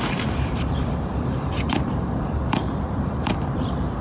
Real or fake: fake